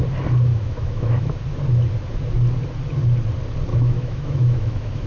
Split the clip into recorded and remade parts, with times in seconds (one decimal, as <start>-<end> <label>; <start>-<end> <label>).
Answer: 0.0-0.5 recorded; 0.5-1.3 remade; 1.3-3.7 recorded; 3.7-5.1 remade